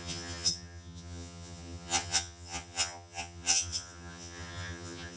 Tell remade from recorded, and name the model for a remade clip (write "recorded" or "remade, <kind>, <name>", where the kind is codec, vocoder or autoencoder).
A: remade, vocoder, HiFi-GAN